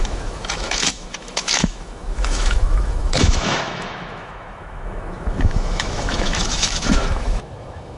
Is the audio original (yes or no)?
no